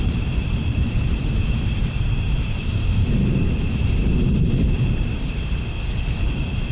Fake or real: fake